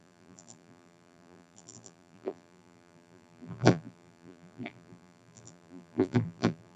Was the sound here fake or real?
fake